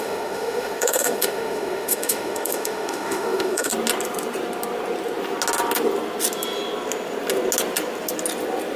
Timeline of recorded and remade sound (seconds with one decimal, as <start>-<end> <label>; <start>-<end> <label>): 0.0-3.7 remade; 3.7-8.8 recorded